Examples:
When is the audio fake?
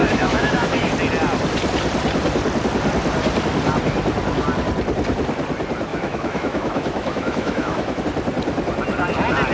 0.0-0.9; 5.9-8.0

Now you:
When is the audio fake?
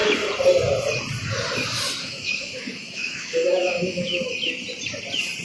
2.0-4.3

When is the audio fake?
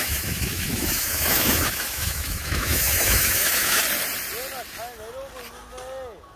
0.0-3.8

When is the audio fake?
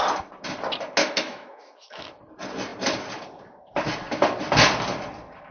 1.0-2.1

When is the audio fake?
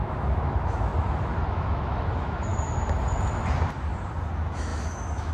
0.0-0.9; 1.5-2.5; 4.3-5.3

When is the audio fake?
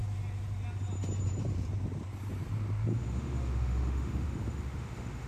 2.9-5.3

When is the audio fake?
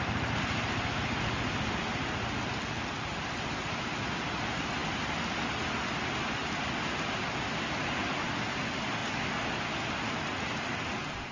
none